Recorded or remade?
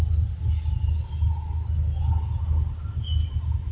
recorded